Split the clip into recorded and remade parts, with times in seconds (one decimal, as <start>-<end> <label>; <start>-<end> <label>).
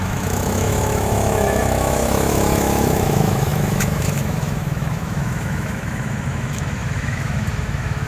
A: 0.0-8.1 remade